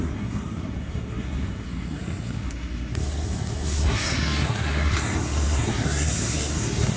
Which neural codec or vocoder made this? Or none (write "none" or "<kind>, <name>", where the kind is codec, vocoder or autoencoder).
codec, SNAC